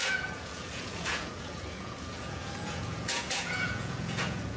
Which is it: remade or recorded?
remade